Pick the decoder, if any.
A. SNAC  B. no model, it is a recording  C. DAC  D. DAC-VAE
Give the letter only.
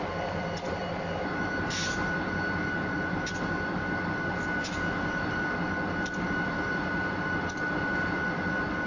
B